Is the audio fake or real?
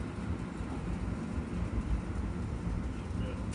real